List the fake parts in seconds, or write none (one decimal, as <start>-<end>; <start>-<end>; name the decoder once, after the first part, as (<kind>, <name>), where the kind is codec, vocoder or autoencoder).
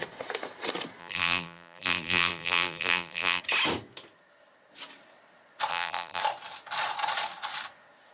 1.0-3.4 (vocoder, BigVGAN v2); 5.7-6.2